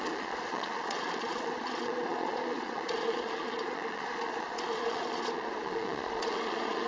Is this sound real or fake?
fake